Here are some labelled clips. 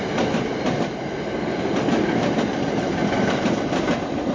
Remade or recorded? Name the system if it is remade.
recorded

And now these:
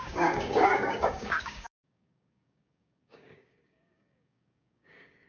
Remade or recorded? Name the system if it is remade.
remade, codec, DAC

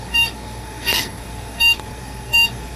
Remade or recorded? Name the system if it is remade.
remade, codec, SNAC